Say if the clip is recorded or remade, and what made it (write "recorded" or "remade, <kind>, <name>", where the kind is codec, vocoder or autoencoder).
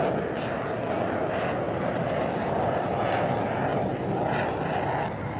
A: recorded